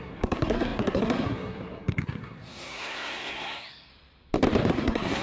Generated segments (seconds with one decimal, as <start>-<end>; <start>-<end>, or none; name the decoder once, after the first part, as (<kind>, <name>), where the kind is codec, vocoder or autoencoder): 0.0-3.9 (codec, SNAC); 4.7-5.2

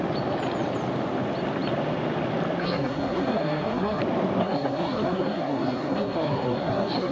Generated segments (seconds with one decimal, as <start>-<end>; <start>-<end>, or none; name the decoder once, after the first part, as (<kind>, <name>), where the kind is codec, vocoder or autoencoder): 2.6-4.0 (codec, SNAC); 4.4-7.1

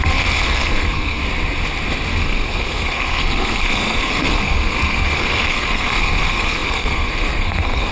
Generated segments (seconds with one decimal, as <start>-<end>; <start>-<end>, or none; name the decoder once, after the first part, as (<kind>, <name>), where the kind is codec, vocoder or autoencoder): 0.0-1.2 (codec, SNAC); 2.2-7.9

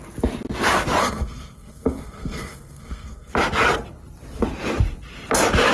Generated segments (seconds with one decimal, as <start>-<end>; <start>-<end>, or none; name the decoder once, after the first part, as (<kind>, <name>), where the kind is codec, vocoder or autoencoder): 1.0-3.3 (codec, SNAC)

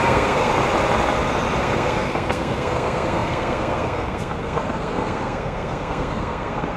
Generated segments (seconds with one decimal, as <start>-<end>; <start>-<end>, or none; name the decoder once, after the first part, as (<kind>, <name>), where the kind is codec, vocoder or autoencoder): 0.0-0.5 (codec, SNAC); 1.6-6.8

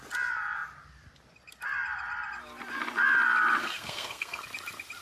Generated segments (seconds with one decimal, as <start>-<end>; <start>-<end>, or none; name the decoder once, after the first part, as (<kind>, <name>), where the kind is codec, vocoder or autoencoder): 3.6-4.4 (codec, SNAC)